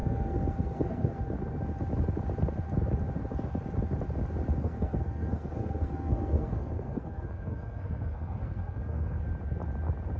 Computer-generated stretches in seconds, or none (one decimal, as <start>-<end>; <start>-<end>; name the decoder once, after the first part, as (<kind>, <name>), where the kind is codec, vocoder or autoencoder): 0.0-1.2 (codec, SNAC); 4.6-9.2